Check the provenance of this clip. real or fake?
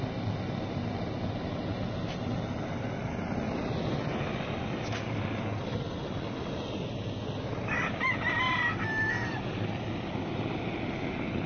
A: real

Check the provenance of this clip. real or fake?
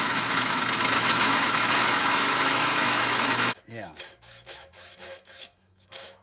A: fake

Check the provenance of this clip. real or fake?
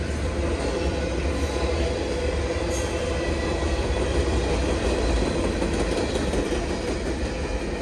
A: real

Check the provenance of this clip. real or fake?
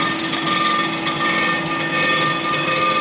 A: real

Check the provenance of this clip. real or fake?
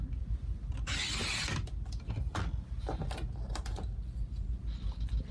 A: real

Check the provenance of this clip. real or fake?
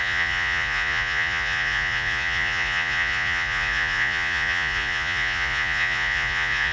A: fake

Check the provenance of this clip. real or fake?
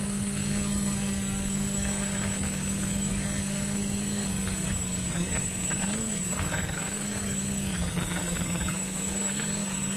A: fake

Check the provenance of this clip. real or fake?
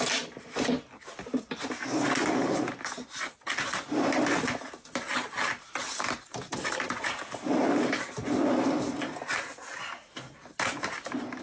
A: real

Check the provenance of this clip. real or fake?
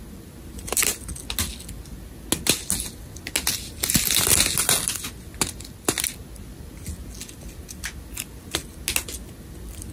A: real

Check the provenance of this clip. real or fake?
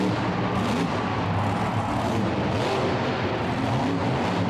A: real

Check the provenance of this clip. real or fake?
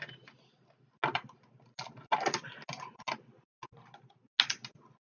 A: real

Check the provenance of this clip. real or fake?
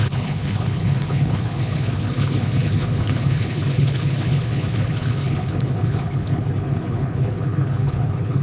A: fake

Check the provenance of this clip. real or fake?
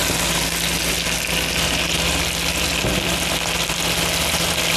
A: real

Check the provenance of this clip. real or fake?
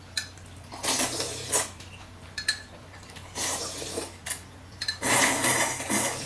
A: real